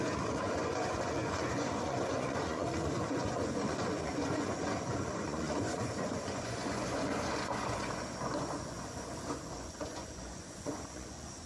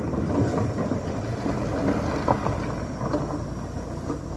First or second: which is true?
second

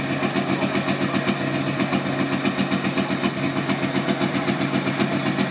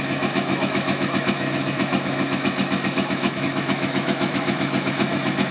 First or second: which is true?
first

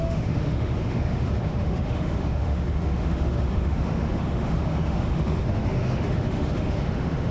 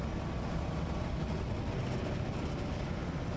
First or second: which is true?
second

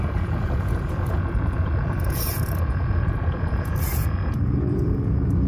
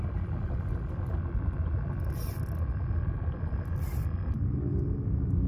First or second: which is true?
second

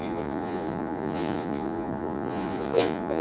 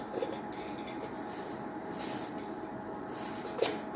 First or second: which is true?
second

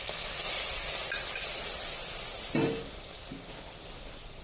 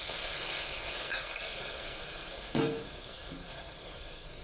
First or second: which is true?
first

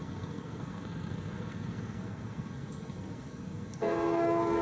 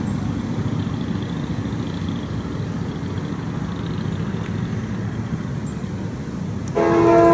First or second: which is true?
second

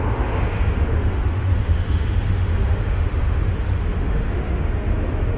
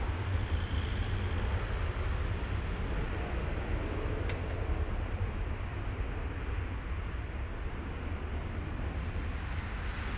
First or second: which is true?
second